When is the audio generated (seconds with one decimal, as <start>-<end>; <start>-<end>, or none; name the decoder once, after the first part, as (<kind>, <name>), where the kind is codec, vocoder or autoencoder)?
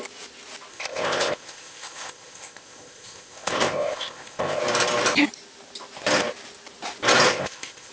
0.7-4.6 (codec, ZipCodec); 7.3-7.9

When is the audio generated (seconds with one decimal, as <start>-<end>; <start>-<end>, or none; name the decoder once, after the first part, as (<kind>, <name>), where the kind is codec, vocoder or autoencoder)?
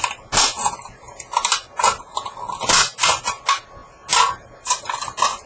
none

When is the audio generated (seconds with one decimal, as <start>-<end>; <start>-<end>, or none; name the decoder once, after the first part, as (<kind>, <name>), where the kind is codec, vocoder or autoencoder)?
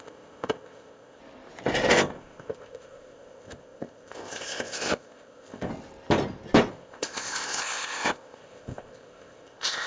0.0-1.2 (codec, ZipCodec); 1.9-5.7; 6.7-9.9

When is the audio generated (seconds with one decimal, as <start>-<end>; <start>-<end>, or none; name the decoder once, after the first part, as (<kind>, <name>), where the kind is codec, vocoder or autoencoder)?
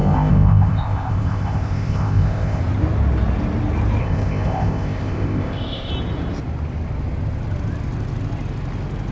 0.0-2.6 (codec, ZipCodec); 4.0-5.9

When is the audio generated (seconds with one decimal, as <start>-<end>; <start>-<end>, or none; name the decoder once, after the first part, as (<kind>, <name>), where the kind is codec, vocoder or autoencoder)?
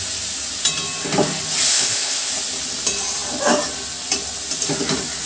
1.7-2.3 (codec, ZipCodec)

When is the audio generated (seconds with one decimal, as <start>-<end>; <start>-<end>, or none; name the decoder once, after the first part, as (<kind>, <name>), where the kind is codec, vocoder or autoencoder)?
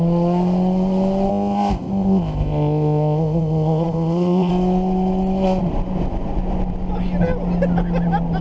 1.3-4.5 (codec, ZipCodec)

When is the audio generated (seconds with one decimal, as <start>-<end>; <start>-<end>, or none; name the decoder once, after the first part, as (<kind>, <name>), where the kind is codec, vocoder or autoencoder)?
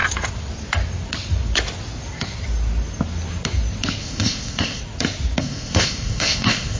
4.0-4.8 (codec, ZipCodec); 5.4-6.8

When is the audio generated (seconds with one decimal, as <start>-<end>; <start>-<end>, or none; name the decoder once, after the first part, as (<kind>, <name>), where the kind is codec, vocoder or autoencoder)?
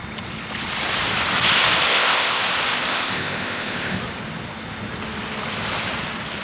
1.9-2.4 (codec, ZipCodec); 2.9-4.0